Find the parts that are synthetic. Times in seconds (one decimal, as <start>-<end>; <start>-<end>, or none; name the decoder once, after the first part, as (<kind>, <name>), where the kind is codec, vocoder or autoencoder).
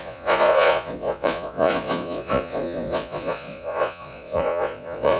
0.0-5.2 (vocoder, Vocos)